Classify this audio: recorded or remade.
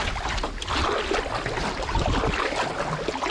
recorded